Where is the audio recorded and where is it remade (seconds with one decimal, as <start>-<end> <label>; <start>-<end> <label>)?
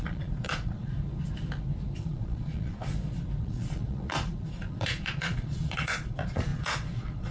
0.0-1.0 remade; 1.0-2.0 recorded; 2.0-2.9 remade; 2.9-3.4 recorded; 3.4-7.3 remade